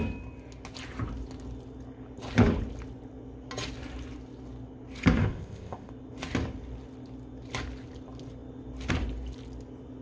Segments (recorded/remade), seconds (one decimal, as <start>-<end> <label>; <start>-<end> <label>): 0.0-5.2 recorded; 5.2-5.9 remade; 5.9-10.0 recorded